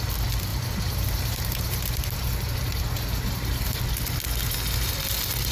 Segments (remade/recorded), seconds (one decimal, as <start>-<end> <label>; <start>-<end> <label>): 0.0-0.5 recorded; 0.5-3.8 remade; 3.8-5.5 recorded

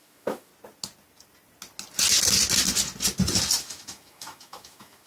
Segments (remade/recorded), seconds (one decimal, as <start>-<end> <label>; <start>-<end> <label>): 0.0-0.5 remade; 0.5-3.6 recorded; 3.6-5.1 remade